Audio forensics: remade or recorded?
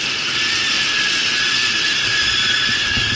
recorded